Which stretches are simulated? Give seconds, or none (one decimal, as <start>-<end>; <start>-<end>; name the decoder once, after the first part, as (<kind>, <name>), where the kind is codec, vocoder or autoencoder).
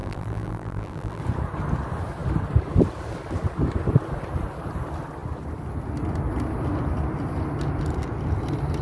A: 0.0-1.2 (vocoder, BigVGAN v2)